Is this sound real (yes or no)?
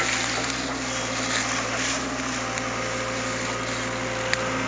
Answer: yes